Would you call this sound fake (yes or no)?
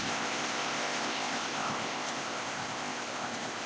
yes